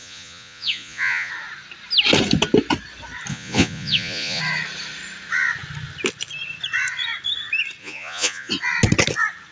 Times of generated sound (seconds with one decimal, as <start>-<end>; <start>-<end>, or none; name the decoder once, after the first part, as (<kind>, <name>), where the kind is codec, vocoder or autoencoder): 0.0-1.3 (vocoder, Vocos); 3.3-4.4; 7.8-8.5